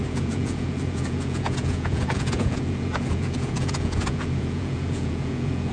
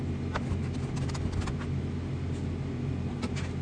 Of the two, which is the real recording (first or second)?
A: second